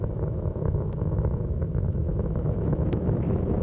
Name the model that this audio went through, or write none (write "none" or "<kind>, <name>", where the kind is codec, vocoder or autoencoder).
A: autoencoder, DAC-VAE